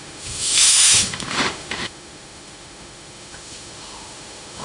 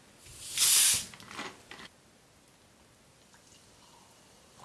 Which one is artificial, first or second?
first